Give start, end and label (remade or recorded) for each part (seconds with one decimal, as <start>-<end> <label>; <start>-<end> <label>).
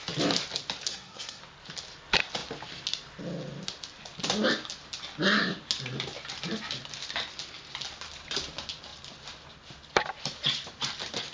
0.0-0.9 recorded; 0.9-1.4 remade; 1.4-11.3 recorded